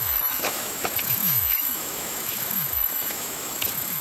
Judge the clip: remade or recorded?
remade